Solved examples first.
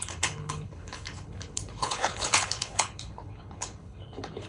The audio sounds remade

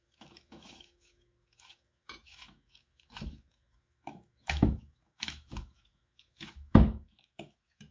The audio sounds remade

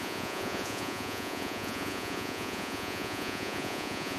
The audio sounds remade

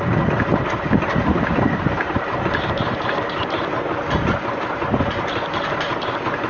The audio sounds recorded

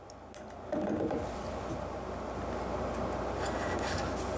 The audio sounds recorded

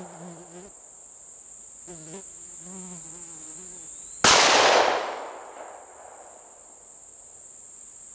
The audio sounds recorded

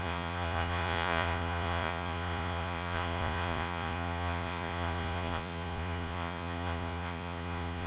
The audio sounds remade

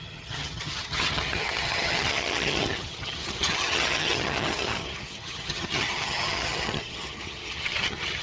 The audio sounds remade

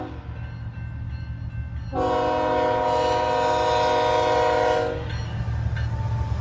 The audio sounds recorded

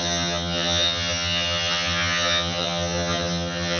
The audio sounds remade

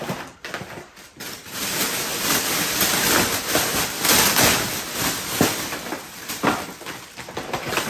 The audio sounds recorded